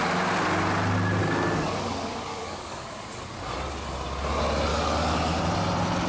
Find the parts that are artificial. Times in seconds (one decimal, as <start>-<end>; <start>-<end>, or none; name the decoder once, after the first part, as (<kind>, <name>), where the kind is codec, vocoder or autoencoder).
1.2-3.0 (codec, DAC); 4.7-5.4